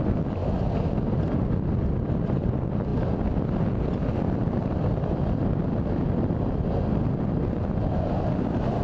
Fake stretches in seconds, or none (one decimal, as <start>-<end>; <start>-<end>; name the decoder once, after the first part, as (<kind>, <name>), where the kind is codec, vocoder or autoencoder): none